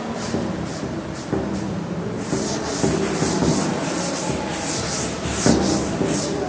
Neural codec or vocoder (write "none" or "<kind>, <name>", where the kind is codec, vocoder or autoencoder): none